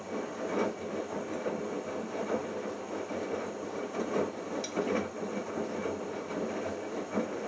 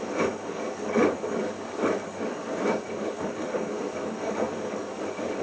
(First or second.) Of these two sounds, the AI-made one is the second